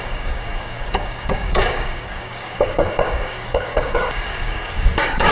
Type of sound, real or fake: fake